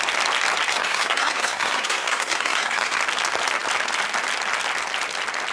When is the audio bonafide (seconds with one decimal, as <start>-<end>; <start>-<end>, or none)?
0.0-0.7; 3.0-5.5